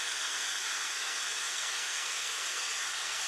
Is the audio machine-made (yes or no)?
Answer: yes